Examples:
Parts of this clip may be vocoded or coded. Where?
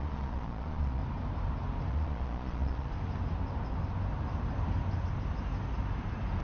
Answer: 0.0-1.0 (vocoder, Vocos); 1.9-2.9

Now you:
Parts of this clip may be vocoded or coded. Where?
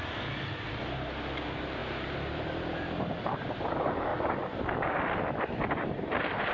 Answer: none